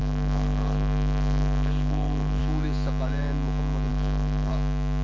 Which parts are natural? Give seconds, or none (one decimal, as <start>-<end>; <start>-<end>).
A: 2.4-3.9; 4.5-5.0